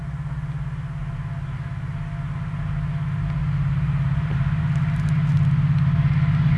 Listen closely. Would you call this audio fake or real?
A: real